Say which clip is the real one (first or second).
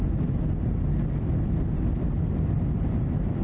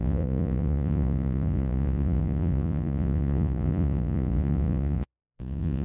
first